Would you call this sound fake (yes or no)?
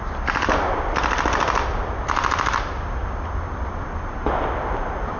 no